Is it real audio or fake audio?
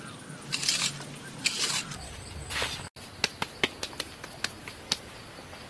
real